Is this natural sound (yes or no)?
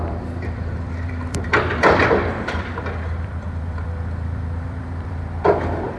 no